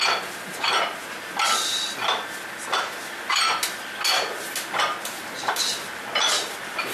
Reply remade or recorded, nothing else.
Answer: recorded